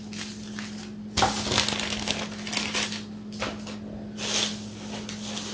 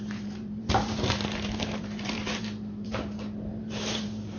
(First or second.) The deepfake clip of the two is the second